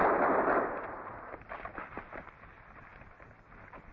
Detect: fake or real real